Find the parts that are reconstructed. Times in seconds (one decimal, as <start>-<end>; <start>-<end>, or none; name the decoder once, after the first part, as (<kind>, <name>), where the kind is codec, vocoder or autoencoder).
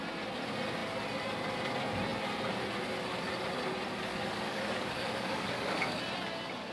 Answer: 4.1-6.0 (codec, DAC)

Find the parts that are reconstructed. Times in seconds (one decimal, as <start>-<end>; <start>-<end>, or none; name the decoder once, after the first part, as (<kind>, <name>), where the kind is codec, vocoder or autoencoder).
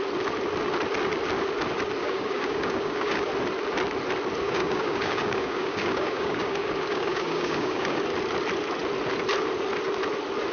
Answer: 2.0-3.3 (codec, DAC); 4.4-8.0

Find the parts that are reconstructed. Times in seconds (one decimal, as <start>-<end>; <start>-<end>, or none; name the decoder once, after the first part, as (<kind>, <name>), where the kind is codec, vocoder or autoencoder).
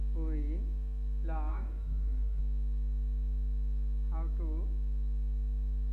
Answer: 1.5-2.4 (codec, DAC)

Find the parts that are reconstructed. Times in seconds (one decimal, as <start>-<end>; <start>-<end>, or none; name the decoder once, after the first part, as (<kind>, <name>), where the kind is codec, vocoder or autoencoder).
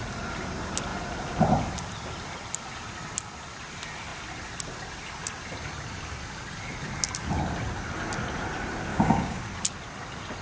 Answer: 8.9-9.4 (codec, DAC)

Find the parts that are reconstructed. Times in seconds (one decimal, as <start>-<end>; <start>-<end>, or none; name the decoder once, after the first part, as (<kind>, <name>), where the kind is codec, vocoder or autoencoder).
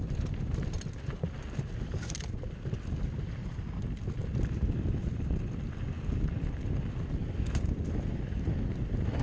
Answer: none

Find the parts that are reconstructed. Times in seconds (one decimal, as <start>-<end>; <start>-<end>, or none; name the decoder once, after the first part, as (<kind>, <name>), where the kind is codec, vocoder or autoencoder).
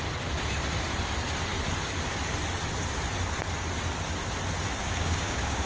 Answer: 4.8-5.7 (codec, DAC)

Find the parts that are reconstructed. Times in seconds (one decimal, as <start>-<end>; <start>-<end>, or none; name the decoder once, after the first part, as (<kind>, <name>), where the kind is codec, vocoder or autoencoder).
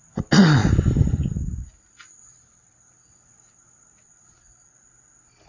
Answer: none